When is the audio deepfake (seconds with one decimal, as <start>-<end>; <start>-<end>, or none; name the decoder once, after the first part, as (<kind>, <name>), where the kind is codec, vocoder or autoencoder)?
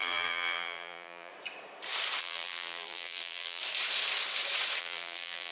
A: 0.0-1.3 (vocoder, BigVGAN v2); 2.2-3.6; 4.8-5.5